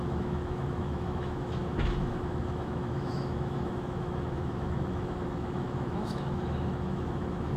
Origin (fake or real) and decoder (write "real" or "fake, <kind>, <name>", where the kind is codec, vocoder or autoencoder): fake, autoencoder, DAC-VAE